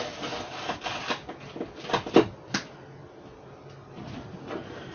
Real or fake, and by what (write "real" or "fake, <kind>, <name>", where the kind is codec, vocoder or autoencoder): real